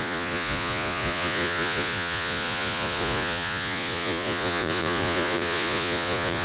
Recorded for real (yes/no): no